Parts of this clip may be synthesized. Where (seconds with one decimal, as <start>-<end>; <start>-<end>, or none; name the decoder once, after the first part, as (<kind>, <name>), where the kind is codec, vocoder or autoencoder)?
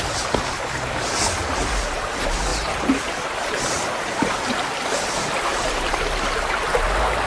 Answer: 2.5-4.5 (vocoder, BigVGAN v2); 5.5-6.6